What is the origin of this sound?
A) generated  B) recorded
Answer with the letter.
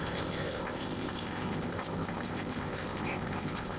A